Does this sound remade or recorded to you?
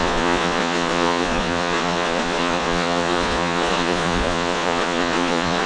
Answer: remade